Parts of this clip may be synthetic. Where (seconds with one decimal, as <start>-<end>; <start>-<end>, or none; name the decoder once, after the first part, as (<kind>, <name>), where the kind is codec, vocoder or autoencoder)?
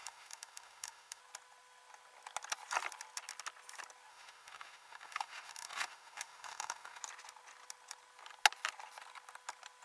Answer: 0.0-1.2 (autoencoder, DAC-VAE); 4.1-7.0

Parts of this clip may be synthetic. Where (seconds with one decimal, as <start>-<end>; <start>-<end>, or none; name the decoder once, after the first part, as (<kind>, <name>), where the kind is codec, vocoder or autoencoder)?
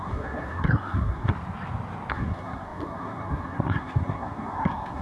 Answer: 0.0-1.3 (codec, SNAC); 2.1-5.0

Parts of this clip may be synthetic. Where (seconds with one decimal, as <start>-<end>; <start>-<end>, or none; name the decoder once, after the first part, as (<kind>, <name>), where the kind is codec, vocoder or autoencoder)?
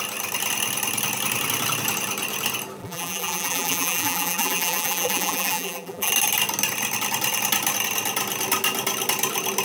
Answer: 2.8-6.1 (vocoder, BigVGAN v2)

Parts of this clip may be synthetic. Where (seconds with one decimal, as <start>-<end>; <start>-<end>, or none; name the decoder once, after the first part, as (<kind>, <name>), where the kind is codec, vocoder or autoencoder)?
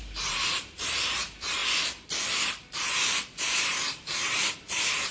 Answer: 0.0-1.6 (vocoder, BigVGAN v2); 2.9-5.1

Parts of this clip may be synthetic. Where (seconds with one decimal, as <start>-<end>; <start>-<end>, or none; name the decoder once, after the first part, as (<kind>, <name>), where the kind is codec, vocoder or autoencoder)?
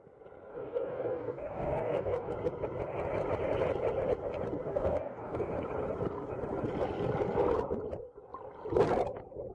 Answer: 0.5-2.3 (codec, DAC); 4.7-5.5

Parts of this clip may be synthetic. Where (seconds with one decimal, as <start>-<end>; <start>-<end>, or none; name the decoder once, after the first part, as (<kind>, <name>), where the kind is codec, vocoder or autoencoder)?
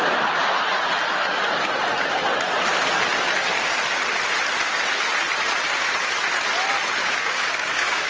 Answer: 7.0-8.1 (codec, DAC)